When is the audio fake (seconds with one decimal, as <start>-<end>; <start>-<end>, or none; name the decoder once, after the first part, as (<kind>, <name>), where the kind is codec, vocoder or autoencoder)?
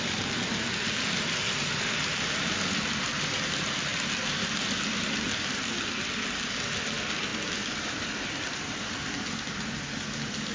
none